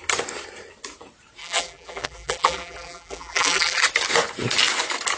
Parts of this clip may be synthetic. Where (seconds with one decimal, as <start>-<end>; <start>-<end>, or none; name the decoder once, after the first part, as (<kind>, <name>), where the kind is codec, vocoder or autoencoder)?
1.4-3.8 (vocoder, BigVGAN v2)

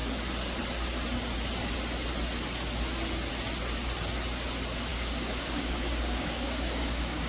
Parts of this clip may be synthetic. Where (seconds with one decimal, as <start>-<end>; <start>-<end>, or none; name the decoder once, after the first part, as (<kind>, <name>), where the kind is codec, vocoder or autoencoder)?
4.9-7.3 (codec, DAC)

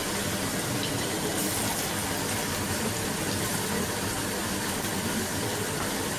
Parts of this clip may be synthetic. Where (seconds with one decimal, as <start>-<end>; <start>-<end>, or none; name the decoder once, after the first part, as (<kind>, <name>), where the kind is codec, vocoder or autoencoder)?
none

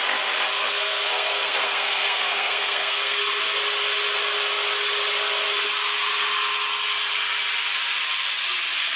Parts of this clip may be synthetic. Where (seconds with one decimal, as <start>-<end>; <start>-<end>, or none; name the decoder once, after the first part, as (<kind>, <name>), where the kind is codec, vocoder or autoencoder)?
0.6-3.2 (codec, SNAC)

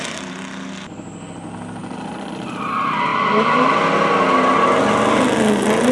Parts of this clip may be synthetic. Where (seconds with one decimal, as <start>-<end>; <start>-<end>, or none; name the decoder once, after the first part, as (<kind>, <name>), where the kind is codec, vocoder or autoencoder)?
1.8-2.7 (vocoder, BigVGAN v2); 3.1-3.8

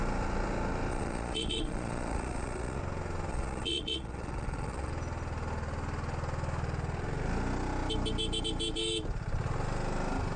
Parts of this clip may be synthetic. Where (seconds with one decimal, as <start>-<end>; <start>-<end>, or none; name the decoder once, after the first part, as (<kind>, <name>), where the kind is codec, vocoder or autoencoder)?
0.9-2.8 (vocoder, Vocos); 3.3-4.9

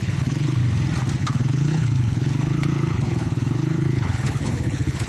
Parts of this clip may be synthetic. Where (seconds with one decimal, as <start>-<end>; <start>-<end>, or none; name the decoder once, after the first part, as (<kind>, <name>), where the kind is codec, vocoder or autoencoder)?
0.0-0.6 (codec, HILCodec); 1.2-5.1

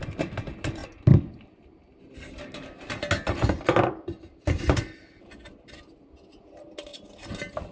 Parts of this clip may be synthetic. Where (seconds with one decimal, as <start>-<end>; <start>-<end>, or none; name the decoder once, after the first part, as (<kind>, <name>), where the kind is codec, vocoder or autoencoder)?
none